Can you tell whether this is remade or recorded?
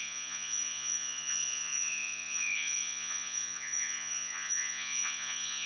remade